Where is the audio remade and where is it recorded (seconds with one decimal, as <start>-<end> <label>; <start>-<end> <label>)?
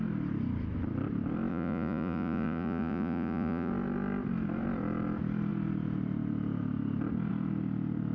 0.0-1.5 recorded; 1.5-3.7 remade; 3.7-8.1 recorded